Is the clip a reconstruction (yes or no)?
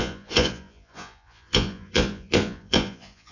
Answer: yes